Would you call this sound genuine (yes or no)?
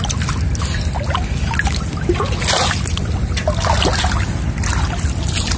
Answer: yes